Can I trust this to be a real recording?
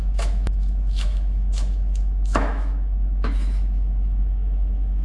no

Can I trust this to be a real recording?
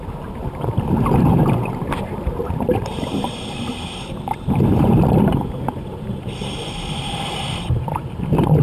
no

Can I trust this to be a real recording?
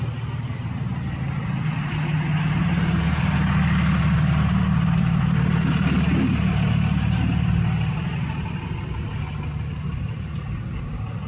yes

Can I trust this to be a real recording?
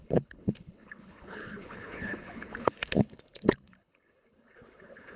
no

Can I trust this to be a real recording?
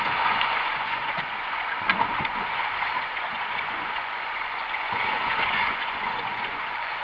no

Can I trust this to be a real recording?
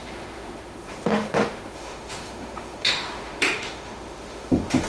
no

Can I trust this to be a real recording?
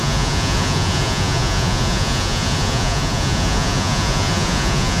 no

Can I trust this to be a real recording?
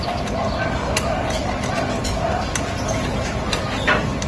yes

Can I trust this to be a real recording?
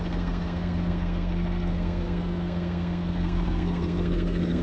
no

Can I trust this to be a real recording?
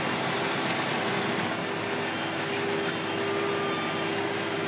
yes